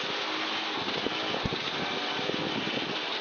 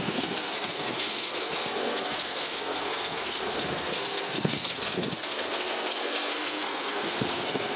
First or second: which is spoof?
second